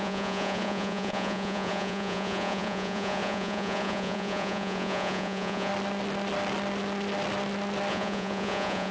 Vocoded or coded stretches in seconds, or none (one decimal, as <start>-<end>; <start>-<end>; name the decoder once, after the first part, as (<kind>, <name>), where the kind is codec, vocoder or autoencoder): 0.0-5.7 (vocoder, Vocos); 7.9-8.9